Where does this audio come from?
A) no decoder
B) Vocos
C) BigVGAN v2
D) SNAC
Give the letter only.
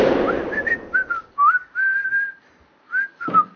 A